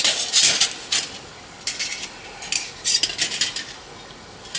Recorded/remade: recorded